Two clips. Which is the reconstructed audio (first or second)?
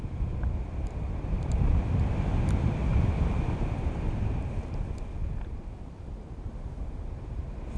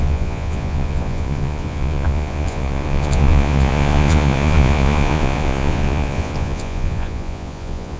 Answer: second